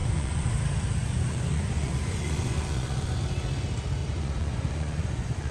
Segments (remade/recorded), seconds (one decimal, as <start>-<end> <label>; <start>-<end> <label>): 0.0-0.5 remade; 0.5-1.0 recorded; 1.0-3.2 remade; 3.2-4.0 recorded; 4.0-5.5 remade